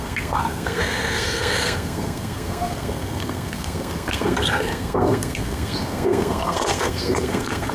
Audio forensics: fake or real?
fake